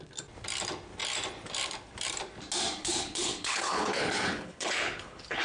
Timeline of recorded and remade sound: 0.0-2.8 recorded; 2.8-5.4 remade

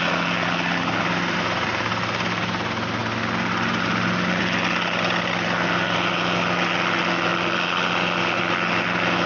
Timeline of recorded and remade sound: 0.0-9.3 recorded

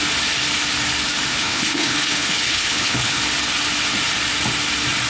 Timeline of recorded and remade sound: 0.0-1.3 recorded; 1.3-3.2 remade; 3.2-5.1 recorded

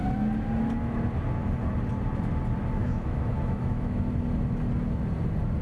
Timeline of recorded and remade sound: 0.0-2.8 recorded; 2.8-4.0 remade; 4.0-5.6 recorded

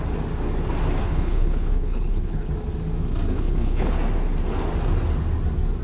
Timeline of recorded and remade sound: 0.0-1.0 recorded; 1.0-2.5 remade; 2.5-3.3 recorded; 3.3-3.9 remade; 3.9-5.8 recorded

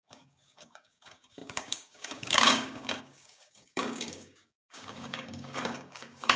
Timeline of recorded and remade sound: 0.0-6.4 remade

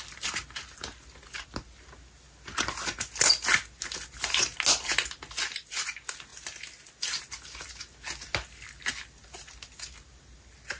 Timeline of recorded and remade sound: 0.0-10.8 recorded

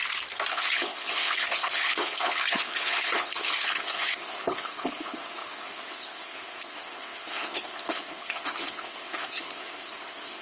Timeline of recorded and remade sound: 0.0-0.5 recorded; 0.5-10.4 remade